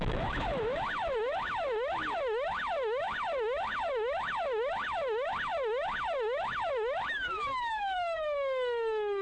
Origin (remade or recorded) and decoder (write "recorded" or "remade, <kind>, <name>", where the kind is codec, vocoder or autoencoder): remade, autoencoder, DAC-VAE